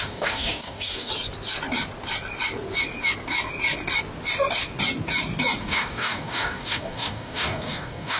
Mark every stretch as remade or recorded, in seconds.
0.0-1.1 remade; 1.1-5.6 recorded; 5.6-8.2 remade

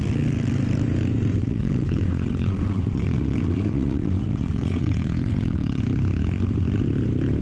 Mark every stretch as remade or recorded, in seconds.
0.0-1.4 recorded; 1.4-5.8 remade; 5.8-7.4 recorded

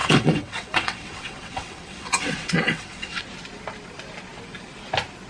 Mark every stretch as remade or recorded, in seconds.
0.0-3.2 remade; 3.2-5.3 recorded